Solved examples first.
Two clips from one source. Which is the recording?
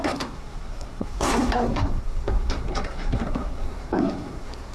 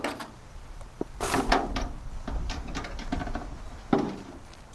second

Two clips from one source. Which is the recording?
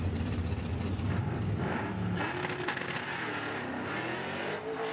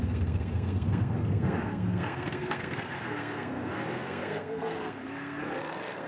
first